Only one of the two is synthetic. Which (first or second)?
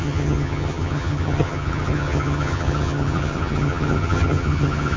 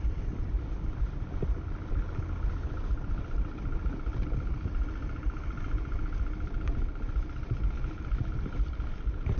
first